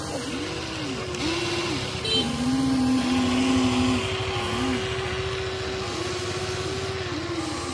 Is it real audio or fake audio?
real